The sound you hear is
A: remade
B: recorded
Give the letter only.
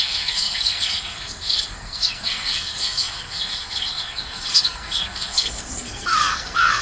A